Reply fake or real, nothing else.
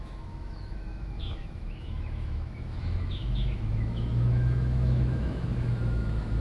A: fake